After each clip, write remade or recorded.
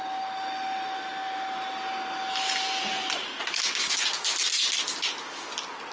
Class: recorded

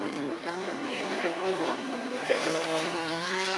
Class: remade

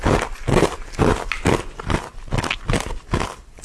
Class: recorded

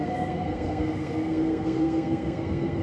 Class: remade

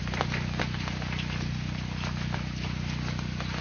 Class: recorded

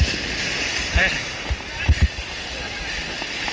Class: recorded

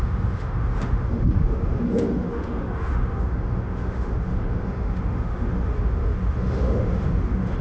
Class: remade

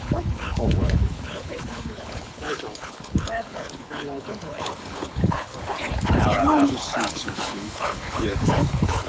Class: remade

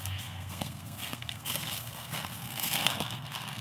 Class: remade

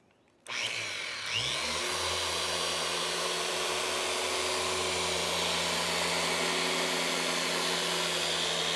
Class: recorded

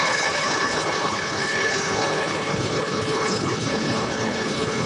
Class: remade